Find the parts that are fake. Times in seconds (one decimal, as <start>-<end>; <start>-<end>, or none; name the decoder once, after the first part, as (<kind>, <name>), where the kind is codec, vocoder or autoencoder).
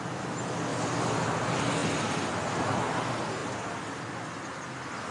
none